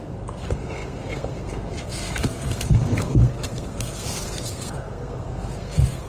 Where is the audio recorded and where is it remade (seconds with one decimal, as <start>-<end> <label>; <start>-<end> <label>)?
0.0-6.1 remade